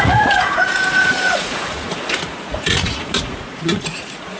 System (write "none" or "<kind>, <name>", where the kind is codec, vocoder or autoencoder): vocoder, Vocos